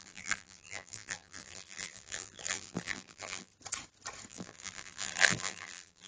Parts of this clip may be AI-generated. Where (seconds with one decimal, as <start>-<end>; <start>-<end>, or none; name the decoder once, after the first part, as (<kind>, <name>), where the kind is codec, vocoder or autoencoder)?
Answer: 0.0-3.5 (vocoder, BigVGAN v2); 4.3-6.1